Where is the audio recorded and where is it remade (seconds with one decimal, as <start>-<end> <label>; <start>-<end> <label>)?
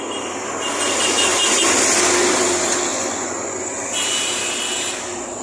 0.0-2.9 recorded; 2.9-3.7 remade; 3.7-5.4 recorded